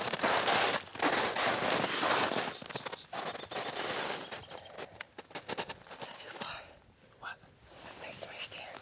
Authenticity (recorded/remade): recorded